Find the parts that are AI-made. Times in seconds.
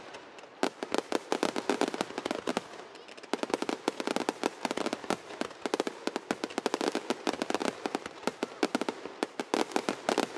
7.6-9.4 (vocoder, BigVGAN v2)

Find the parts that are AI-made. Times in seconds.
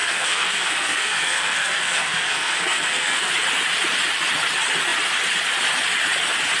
0.0-3.3 (codec, SNAC)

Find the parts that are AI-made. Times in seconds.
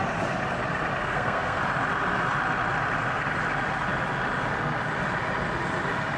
1.0-1.6 (codec, SNAC)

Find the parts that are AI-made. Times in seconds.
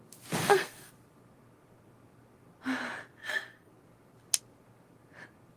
0.4-0.9 (codec, SNAC); 3.2-3.7